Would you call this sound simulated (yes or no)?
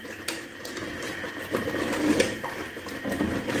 no